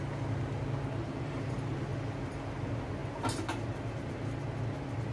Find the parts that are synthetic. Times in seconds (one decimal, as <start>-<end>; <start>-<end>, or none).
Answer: 1.0-1.7